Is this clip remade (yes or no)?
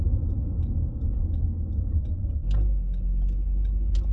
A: no